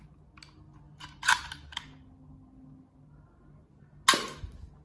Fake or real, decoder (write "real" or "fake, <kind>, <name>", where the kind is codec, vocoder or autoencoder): real